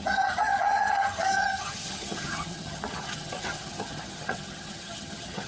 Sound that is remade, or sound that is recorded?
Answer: remade